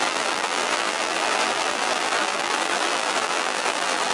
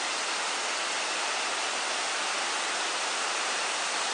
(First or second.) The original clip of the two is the second